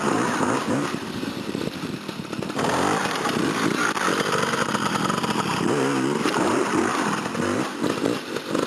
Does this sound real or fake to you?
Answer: fake